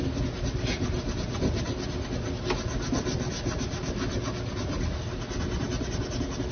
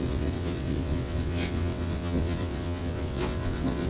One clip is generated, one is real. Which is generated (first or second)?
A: second